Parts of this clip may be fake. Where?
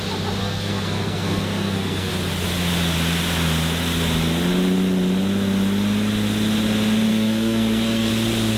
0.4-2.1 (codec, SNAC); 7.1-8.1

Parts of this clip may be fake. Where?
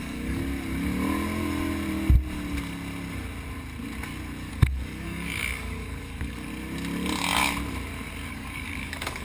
0.0-0.4 (codec, DAC); 4.5-6.5; 8.3-9.2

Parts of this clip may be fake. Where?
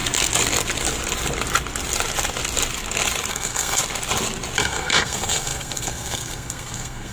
3.3-3.8 (codec, SNAC); 4.6-7.1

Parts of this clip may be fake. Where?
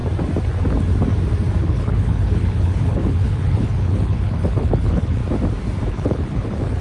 1.6-5.2 (codec, HILCodec); 5.9-6.8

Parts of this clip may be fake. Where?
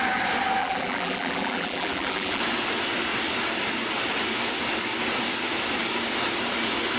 0.6-2.4 (vocoder, BigVGAN v2)